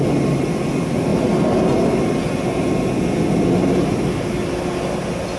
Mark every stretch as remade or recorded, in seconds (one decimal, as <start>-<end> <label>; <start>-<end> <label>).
0.0-5.4 recorded